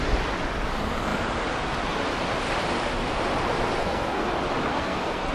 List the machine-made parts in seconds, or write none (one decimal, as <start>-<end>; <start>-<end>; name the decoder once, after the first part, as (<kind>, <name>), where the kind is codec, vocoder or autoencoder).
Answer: 3.8-4.3 (codec, SNAC); 4.7-5.3

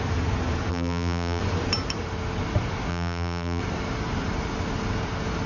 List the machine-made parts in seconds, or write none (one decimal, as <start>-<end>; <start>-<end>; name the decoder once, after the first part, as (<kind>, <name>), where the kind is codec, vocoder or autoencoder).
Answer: 0.7-1.4 (vocoder, BigVGAN v2); 2.9-3.6

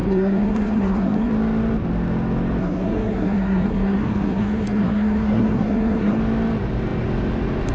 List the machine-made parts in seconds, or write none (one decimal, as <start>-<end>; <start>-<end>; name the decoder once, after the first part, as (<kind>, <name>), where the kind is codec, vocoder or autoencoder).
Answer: 0.0-1.3 (codec, SNAC); 2.6-6.2

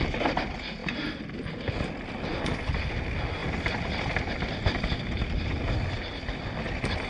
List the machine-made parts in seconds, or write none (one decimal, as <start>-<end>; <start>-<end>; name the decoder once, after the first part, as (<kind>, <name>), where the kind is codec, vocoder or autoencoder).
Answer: 3.4-6.2 (vocoder, BigVGAN v2)

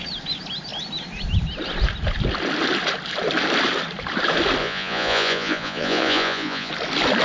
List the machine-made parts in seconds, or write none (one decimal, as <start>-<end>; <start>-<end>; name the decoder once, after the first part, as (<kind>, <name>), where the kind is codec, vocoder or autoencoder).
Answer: 4.6-6.7 (vocoder, Vocos)